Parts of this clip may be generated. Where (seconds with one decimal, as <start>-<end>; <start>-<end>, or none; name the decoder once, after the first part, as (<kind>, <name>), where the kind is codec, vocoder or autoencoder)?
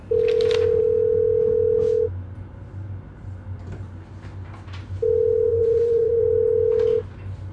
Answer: 5.5-6.2 (vocoder, Vocos)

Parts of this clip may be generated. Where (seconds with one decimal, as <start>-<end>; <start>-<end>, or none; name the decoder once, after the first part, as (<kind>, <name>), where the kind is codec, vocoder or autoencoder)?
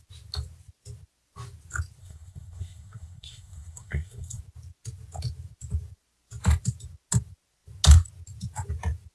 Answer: 2.0-4.4 (codec, SNAC)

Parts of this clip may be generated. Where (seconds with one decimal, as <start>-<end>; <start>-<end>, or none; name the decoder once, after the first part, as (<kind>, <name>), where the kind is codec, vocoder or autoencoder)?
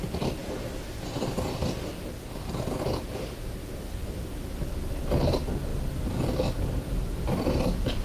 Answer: none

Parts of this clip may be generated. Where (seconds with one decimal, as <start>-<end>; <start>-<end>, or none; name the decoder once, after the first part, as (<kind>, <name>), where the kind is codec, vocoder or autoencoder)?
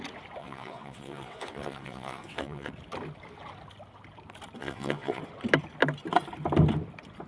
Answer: 0.4-2.7 (vocoder, WaveNeXt); 4.6-5.2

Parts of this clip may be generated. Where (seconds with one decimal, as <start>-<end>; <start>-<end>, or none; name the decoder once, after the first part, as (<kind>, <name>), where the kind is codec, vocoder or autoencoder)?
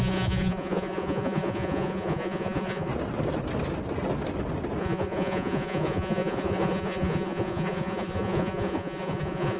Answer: 0.0-2.9 (vocoder, Vocos); 4.8-9.6